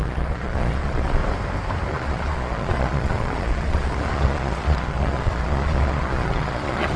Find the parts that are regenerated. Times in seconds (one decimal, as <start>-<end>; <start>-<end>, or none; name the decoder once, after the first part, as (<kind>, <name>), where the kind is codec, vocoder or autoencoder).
0.0-1.2 (vocoder, Vocos); 1.9-7.0